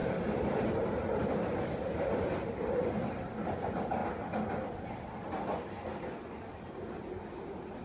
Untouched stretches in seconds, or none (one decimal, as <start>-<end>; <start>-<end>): 2.5-7.8